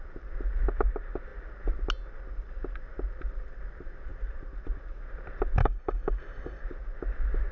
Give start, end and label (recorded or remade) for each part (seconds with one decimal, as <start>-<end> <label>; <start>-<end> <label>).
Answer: 0.0-5.6 recorded; 5.6-6.6 remade; 6.6-7.5 recorded